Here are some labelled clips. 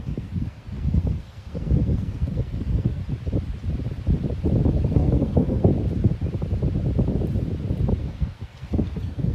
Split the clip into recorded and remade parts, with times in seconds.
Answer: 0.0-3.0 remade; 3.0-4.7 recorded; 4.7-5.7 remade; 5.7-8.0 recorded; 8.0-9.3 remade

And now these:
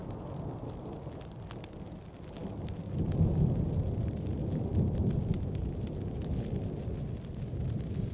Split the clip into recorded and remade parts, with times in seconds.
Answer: 0.0-8.1 recorded

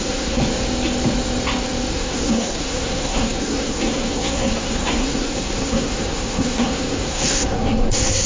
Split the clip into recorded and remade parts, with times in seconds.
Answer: 0.0-0.4 remade; 0.4-1.9 recorded; 1.9-8.3 remade

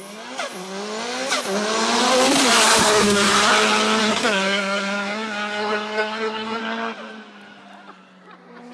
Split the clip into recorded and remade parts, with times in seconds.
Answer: 0.0-2.8 recorded; 2.8-3.5 remade; 3.5-4.0 recorded; 4.0-6.6 remade; 6.6-8.7 recorded